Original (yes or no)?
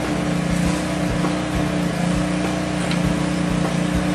yes